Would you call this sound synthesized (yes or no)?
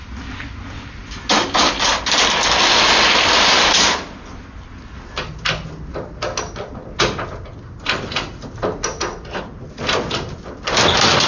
no